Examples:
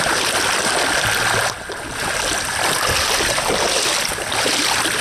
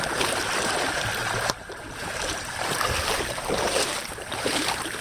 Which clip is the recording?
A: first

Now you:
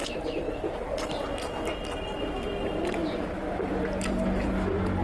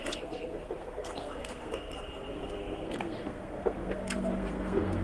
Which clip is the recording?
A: first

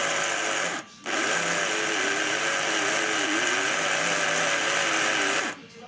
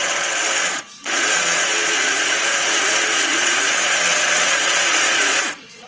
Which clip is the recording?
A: first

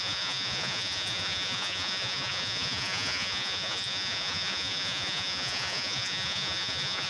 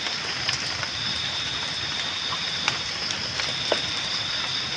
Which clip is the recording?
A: second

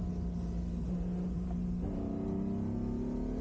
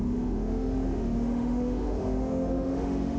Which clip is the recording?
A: first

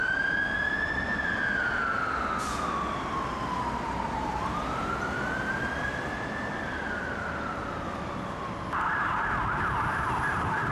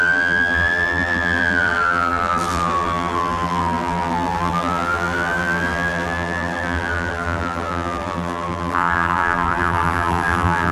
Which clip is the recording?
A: first